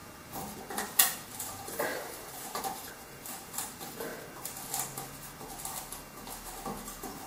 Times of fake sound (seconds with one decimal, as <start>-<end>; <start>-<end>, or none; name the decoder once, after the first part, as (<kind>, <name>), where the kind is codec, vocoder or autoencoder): 1.4-4.1 (vocoder, BigVGAN v2)